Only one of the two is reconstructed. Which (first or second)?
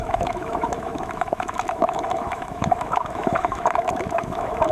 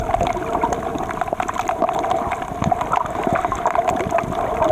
first